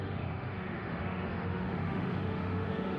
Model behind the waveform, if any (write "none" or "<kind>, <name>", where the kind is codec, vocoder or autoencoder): autoencoder, DAC-VAE